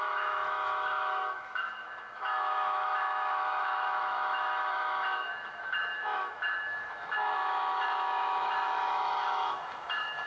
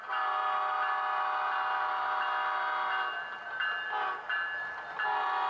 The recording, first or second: second